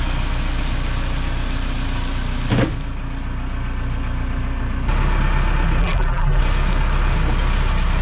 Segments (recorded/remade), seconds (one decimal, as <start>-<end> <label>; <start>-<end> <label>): 0.0-5.8 recorded; 5.8-6.4 remade; 6.4-8.0 recorded